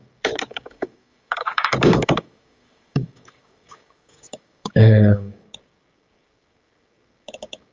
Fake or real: fake